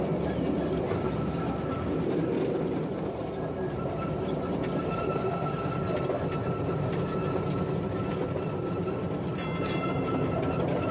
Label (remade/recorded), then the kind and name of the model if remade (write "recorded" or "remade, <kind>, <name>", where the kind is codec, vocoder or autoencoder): recorded